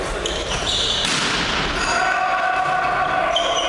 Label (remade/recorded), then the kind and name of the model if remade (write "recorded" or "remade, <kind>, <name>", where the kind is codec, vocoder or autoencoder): recorded